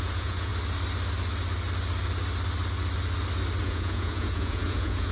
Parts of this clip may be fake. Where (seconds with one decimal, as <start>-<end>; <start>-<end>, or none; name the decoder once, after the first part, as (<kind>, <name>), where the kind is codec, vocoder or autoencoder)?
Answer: 0.0-0.5 (vocoder, Vocos); 3.6-5.1